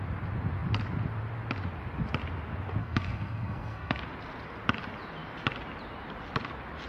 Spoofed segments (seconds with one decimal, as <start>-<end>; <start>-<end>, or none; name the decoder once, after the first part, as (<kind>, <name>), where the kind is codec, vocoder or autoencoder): 2.8-4.0 (codec, SNAC)